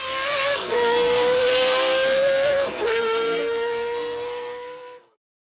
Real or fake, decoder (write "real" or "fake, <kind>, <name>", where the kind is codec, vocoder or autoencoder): fake, codec, SNAC